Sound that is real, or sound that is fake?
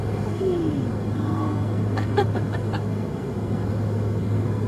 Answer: fake